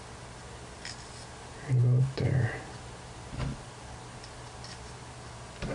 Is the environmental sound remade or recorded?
recorded